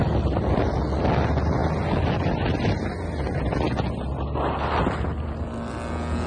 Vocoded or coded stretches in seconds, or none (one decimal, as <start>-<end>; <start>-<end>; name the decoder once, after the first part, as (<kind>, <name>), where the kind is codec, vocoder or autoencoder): 0.0-0.7 (vocoder, BigVGAN v2)